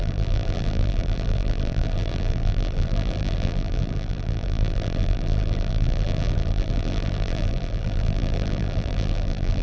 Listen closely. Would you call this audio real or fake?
fake